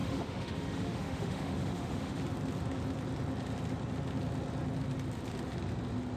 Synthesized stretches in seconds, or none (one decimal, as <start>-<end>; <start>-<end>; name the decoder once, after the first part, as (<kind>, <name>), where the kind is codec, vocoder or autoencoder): 0.0-2.2 (autoencoder, DAC-VAE)